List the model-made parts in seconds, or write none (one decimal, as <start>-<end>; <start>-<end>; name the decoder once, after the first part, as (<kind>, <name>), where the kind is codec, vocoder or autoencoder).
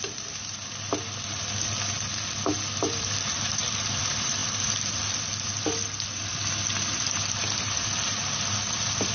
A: 0.0-4.4 (vocoder, BigVGAN v2); 4.9-9.1